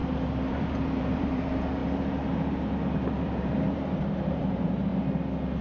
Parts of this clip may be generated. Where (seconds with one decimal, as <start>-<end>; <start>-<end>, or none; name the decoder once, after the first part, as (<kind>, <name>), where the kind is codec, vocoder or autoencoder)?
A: 0.0-4.9 (vocoder, BigVGAN v2)